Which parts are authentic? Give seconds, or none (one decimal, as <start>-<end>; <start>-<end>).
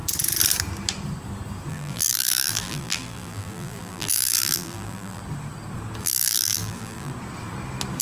0.0-1.7; 5.2-6.0; 7.1-8.0